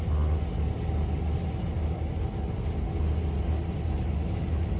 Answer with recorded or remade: recorded